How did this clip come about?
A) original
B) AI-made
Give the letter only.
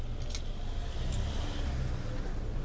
A